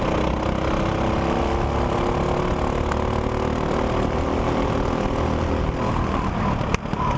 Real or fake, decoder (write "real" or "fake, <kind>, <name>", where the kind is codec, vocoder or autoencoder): real